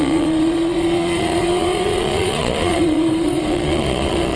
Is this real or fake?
fake